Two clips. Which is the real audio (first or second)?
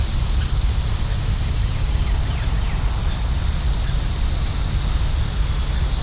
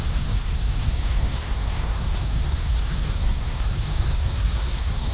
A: first